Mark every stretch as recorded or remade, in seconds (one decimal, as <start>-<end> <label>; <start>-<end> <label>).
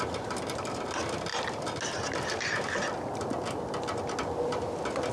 0.0-5.1 recorded